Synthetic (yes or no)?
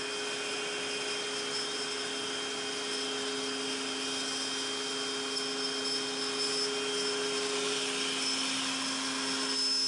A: no